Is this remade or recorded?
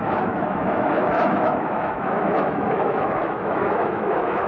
remade